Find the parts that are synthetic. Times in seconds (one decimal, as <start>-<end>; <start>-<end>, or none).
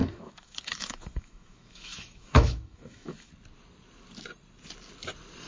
0.0-3.3